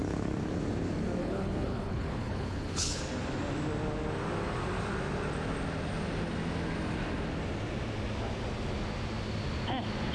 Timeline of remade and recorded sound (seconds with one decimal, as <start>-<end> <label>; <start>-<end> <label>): 0.0-1.2 recorded; 1.2-3.0 remade; 3.0-10.1 recorded